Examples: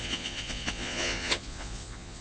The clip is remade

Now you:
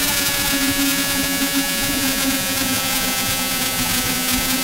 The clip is remade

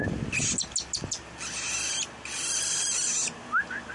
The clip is recorded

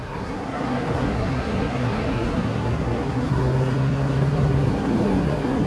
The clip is remade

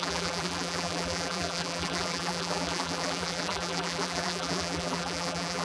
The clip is remade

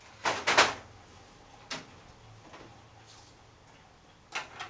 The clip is recorded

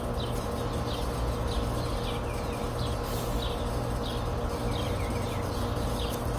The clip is recorded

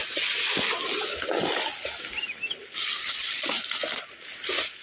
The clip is recorded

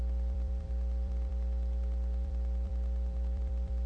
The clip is remade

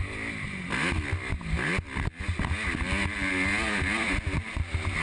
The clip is recorded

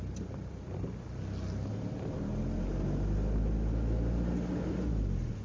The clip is recorded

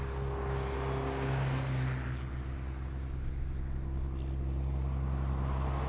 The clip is recorded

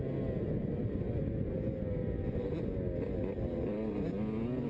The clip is recorded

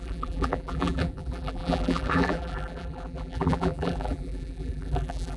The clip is remade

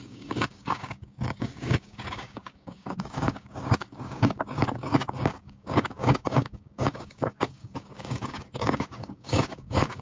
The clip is remade